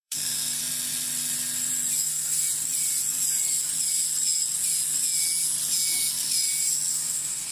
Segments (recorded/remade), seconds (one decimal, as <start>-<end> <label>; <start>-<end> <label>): 0.0-0.6 remade; 0.6-2.0 recorded; 2.0-2.4 remade; 2.4-6.9 recorded; 6.9-7.5 remade